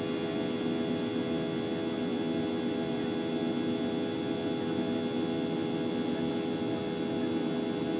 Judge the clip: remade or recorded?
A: recorded